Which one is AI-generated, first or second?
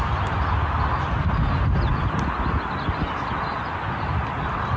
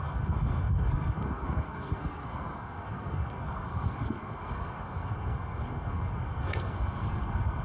second